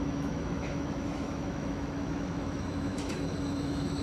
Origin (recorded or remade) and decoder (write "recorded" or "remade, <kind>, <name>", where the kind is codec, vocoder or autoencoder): remade, autoencoder, DAC-VAE